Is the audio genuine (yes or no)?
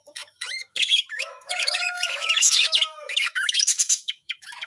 no